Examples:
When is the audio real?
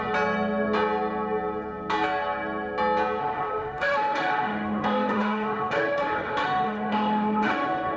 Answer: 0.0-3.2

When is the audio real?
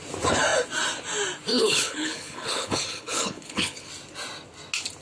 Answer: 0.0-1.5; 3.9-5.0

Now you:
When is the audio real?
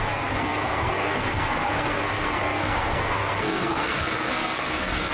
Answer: none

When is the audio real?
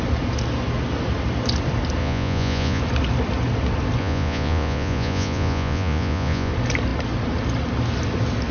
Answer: 0.0-2.0; 2.8-4.0; 6.5-8.5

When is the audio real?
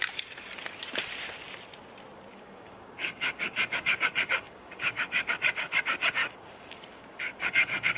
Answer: 0.0-2.3; 5.3-6.2